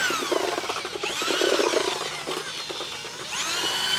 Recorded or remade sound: recorded